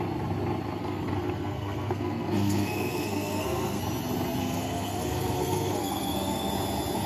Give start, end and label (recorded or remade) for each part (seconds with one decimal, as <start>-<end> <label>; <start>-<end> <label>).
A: 0.0-0.8 recorded; 0.8-3.8 remade; 3.8-4.4 recorded; 4.4-6.5 remade; 6.5-7.1 recorded